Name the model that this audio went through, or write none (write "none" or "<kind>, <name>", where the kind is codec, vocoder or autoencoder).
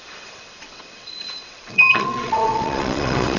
vocoder, WaveNeXt